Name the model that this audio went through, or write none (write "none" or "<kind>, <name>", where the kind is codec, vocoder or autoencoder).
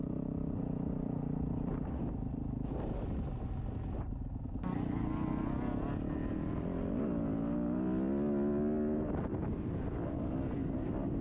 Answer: none